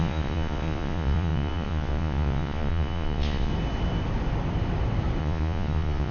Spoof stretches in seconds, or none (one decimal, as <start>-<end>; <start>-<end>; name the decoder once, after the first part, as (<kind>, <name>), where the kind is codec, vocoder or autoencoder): 0.0-3.5 (vocoder, Vocos); 5.2-6.1